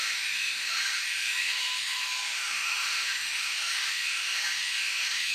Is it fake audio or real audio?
fake